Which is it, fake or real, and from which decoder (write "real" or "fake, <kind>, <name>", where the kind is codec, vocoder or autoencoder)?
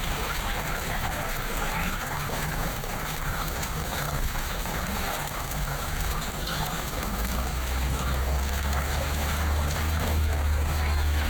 fake, codec, DAC